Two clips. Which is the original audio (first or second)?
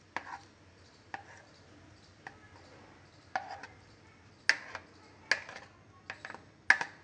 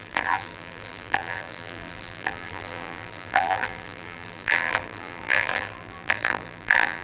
first